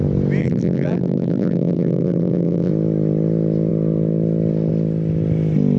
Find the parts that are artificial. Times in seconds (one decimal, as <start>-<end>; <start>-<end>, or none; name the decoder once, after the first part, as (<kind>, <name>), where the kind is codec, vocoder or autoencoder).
0.4-2.7 (vocoder, BigVGAN v2)

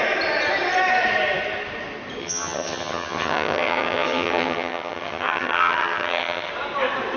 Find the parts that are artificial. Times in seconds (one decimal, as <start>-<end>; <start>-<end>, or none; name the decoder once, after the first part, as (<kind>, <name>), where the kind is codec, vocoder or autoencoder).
2.2-6.5 (vocoder, HiFi-GAN)

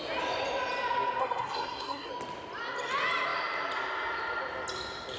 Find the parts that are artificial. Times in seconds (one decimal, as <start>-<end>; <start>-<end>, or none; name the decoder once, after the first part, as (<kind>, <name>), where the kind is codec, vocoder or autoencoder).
1.2-2.1 (codec, SNAC)